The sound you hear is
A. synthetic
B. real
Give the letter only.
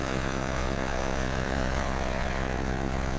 A